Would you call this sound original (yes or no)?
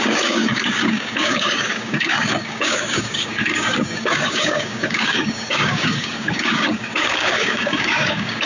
no